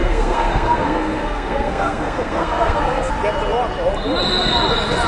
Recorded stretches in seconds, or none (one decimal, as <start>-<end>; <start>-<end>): 3.1-5.1